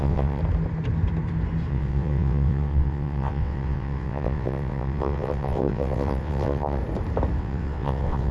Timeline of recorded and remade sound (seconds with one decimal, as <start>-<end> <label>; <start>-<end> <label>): 0.0-0.4 remade; 0.4-1.7 recorded; 1.7-6.8 remade; 6.8-7.4 recorded; 7.4-8.3 remade

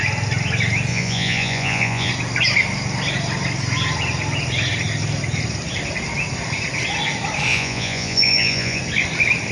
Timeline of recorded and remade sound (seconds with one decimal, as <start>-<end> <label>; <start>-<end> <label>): 0.0-0.9 recorded; 0.9-2.1 remade; 2.1-7.5 recorded; 7.5-8.8 remade; 8.8-9.5 recorded

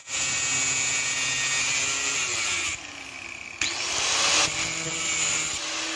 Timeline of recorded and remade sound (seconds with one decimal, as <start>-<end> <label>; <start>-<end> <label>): 0.0-6.0 recorded